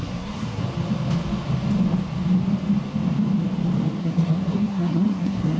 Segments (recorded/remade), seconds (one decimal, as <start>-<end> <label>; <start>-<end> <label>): 0.0-0.6 remade; 0.6-4.0 recorded; 4.0-5.6 remade